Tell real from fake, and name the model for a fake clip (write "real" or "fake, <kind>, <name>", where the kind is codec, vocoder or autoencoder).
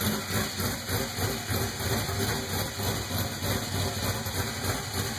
real